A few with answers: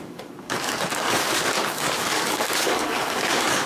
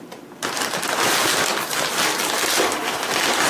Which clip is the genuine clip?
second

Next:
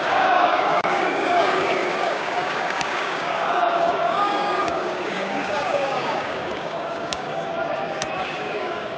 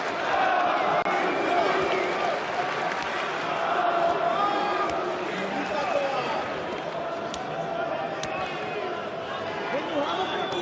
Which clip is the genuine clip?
second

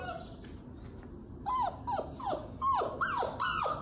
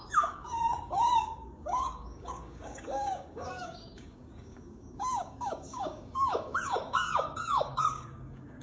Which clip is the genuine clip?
first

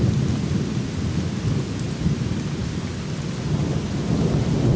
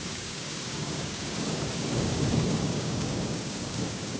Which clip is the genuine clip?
first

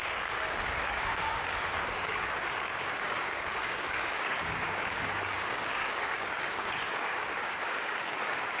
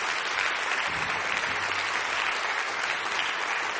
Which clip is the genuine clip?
second